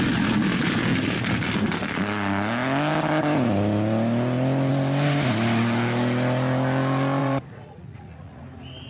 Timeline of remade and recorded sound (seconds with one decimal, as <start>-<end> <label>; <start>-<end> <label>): 0.0-7.2 recorded; 7.2-8.4 remade; 8.4-8.9 recorded